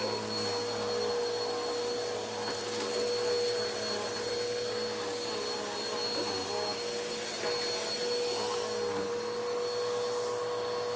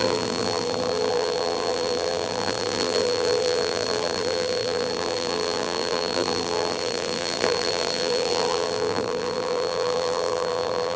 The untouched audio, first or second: first